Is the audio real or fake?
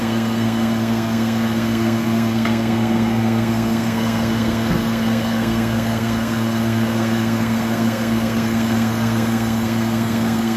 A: fake